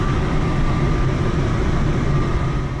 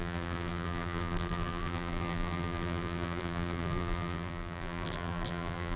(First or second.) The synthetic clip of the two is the second